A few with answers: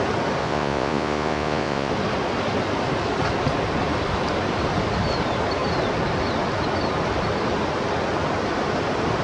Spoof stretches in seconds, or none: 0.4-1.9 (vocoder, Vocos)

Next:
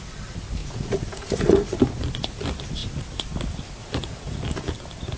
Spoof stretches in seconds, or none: 0.6-1.8 (vocoder, Vocos); 3.8-4.4

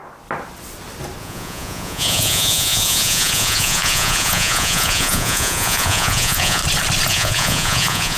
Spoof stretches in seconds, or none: 1.2-6.6 (vocoder, Vocos); 7.1-8.2

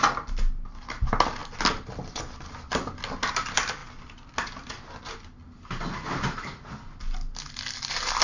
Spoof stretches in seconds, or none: none

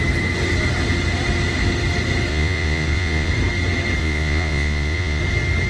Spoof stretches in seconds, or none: 2.3-3.3 (vocoder, Vocos); 4.0-5.2

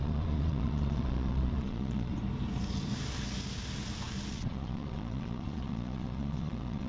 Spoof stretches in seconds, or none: 0.0-2.1 (vocoder, Vocos); 4.3-6.9